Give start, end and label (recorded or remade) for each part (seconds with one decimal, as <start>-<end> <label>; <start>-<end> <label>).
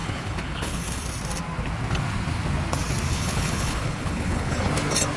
0.0-1.0 remade; 1.0-3.1 recorded; 3.1-4.7 remade; 4.7-5.2 recorded